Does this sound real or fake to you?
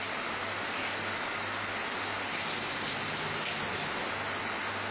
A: real